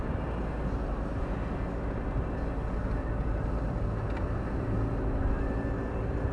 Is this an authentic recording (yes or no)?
yes